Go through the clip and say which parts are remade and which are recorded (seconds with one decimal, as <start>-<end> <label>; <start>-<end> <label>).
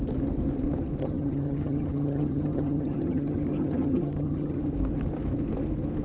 0.0-1.0 recorded; 1.0-4.6 remade; 4.6-6.0 recorded